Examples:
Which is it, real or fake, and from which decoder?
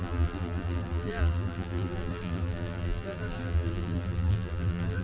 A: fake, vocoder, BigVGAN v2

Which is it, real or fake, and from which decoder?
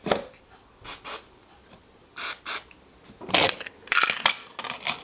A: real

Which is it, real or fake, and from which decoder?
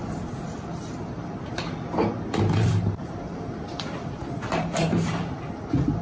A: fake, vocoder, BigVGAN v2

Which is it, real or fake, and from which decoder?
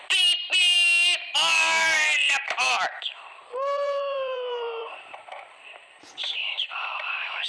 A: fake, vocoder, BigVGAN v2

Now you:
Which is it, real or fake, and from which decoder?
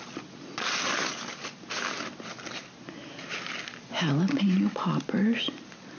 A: real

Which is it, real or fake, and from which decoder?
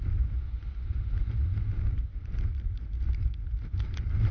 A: real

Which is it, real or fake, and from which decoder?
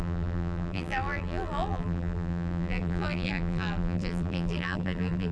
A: fake, vocoder, BigVGAN v2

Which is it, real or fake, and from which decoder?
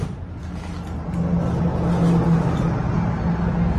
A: real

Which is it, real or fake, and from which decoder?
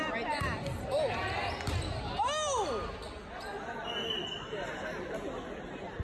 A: real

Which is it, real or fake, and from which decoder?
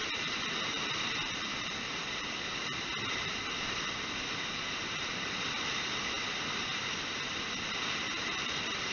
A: fake, vocoder, BigVGAN v2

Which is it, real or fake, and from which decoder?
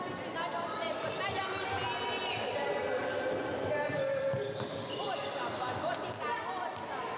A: real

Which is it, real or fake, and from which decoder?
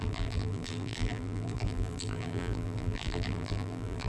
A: fake, vocoder, BigVGAN v2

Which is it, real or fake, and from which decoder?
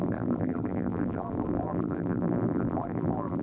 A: fake, vocoder, BigVGAN v2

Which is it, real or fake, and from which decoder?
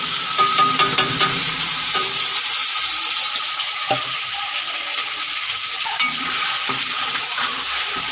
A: fake, vocoder, BigVGAN v2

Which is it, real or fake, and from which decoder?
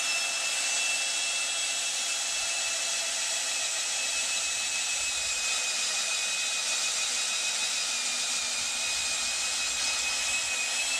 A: real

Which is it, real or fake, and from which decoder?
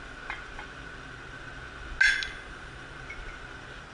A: real